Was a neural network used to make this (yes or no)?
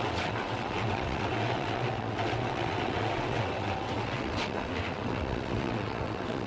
yes